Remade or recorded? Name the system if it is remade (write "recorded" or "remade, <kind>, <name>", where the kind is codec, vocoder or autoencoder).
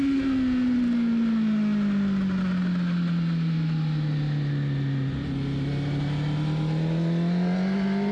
recorded